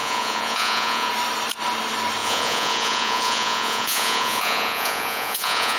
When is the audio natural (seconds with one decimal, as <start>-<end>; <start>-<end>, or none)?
1.1-2.2